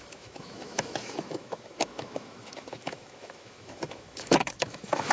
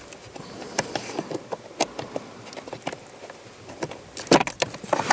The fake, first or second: first